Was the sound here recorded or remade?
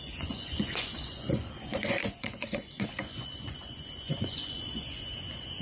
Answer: remade